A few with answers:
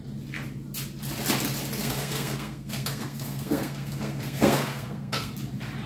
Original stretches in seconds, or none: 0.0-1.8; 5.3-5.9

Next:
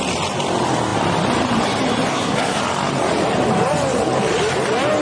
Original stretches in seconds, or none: 0.0-2.1; 2.6-5.0

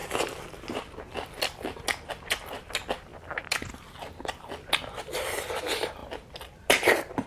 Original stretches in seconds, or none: 0.0-7.3

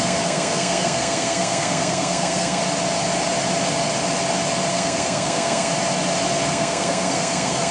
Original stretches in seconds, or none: 2.6-4.7; 5.7-6.5

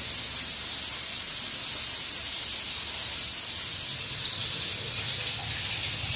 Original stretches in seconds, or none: 0.0-6.2